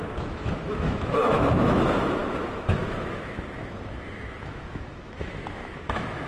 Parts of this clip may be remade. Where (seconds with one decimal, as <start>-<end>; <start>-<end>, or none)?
0.0-6.3